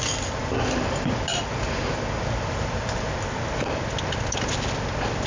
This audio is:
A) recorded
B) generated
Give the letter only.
A